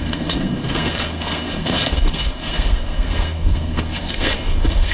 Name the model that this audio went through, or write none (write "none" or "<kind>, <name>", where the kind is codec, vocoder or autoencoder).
codec, SNAC